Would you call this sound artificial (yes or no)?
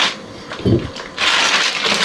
no